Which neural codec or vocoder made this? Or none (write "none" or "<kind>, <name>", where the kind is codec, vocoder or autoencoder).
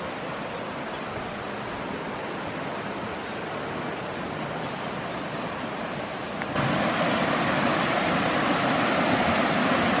none